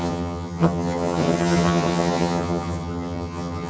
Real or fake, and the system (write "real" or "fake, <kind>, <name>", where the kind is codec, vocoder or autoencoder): fake, vocoder, HiFi-GAN